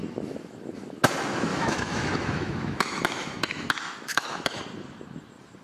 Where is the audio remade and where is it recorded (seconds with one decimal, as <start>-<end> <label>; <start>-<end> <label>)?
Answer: 0.0-1.1 remade; 1.1-1.5 recorded; 1.5-4.6 remade; 4.6-5.6 recorded